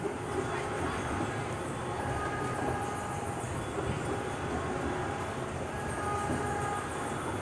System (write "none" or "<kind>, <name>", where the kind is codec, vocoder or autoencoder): none